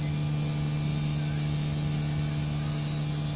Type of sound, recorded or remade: recorded